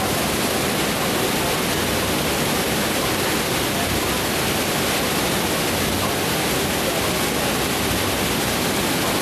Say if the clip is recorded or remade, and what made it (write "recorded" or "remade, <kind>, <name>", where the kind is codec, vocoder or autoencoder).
recorded